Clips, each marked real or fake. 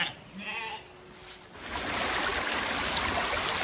real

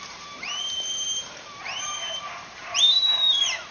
fake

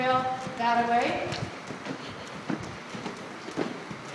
real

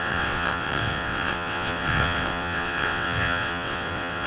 fake